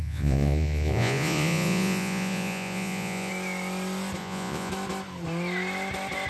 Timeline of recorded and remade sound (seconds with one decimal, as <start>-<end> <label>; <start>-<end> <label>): 0.0-3.3 remade; 3.3-4.2 recorded; 4.2-4.7 remade; 4.7-6.3 recorded